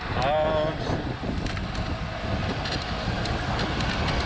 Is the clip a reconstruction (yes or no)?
no